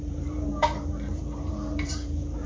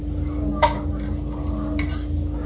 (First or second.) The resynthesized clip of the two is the first